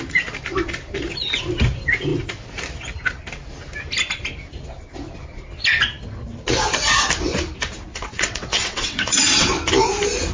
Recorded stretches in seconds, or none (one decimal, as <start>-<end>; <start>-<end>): 0.0-7.9; 9.5-10.3